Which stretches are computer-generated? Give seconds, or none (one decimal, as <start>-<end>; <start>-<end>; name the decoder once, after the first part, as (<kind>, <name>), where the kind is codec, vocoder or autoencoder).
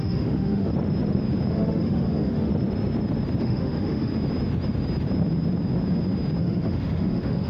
0.0-0.7 (autoencoder, DAC-VAE); 1.5-2.5; 3.4-4.1; 6.4-7.5